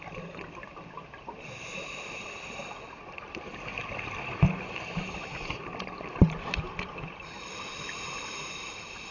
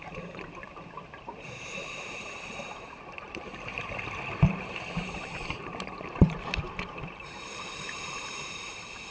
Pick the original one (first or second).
first